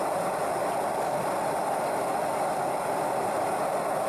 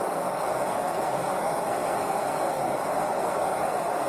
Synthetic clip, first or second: second